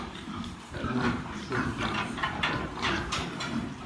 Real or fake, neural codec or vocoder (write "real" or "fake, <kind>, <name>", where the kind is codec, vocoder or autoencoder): fake, vocoder, BigVGAN v2